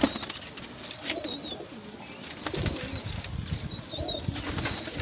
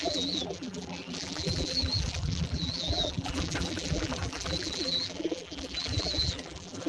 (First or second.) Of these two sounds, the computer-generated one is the second